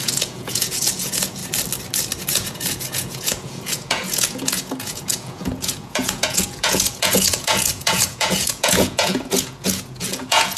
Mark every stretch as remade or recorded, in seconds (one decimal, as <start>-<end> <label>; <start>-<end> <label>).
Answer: 0.0-1.4 remade; 1.4-2.2 recorded; 2.2-10.6 remade